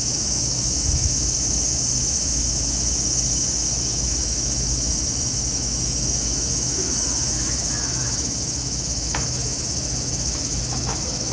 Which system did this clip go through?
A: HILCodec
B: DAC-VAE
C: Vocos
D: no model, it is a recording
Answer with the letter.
B